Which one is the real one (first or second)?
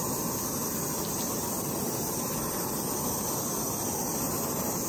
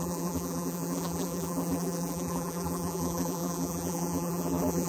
first